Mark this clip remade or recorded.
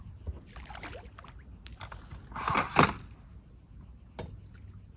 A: recorded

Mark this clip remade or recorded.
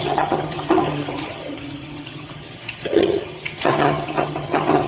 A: remade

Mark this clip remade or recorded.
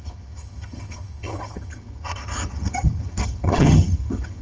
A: remade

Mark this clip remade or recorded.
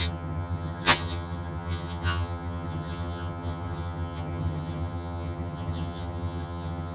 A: remade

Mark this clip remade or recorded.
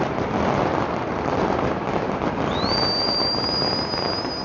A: recorded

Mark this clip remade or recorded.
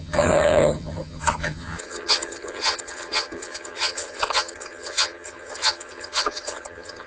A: remade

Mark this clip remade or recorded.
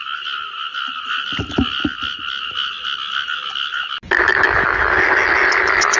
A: recorded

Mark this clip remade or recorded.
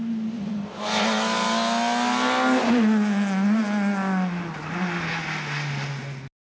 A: recorded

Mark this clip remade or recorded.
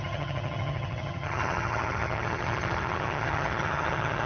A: remade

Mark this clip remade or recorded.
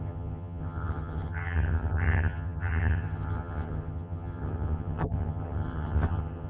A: remade